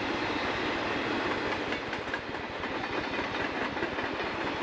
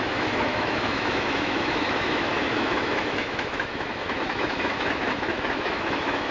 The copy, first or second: second